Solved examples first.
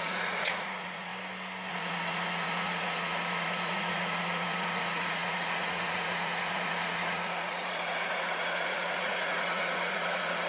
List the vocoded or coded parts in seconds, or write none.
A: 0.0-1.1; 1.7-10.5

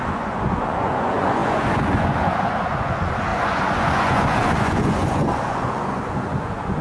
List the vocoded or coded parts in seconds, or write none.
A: 0.0-6.8

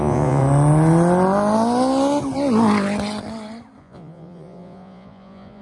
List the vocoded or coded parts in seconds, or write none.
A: 0.0-0.4; 3.8-5.6

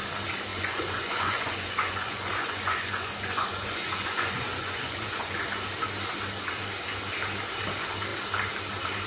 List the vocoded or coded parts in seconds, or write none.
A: 0.5-5.4

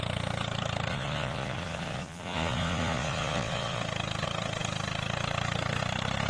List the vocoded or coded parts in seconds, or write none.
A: 0.9-3.8

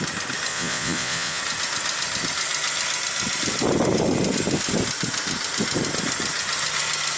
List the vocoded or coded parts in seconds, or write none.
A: 0.5-1.4

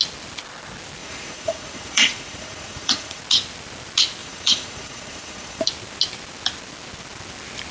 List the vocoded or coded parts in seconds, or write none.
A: 1.0-3.2; 4.2-5.6

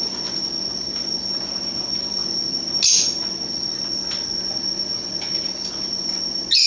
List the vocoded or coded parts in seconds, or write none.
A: none